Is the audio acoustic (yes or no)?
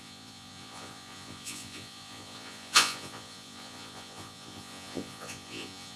no